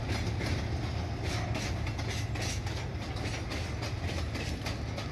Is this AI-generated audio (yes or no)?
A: no